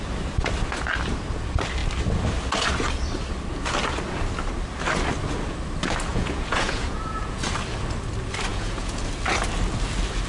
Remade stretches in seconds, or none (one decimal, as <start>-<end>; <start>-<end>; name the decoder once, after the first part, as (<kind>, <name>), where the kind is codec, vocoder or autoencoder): 6.1-7.4 (vocoder, Vocos); 8.5-9.0